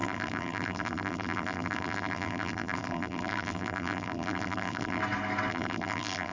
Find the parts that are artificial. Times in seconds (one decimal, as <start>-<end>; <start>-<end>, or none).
0.0-5.0; 5.5-6.3

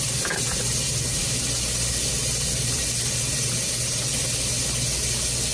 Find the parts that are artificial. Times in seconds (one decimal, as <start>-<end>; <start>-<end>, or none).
none